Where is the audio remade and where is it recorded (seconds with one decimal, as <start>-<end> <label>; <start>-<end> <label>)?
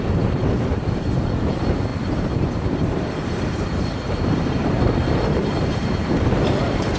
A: 0.0-0.4 remade; 0.4-1.5 recorded; 1.5-7.0 remade